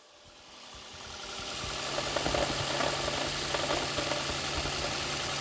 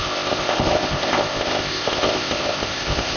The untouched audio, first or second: first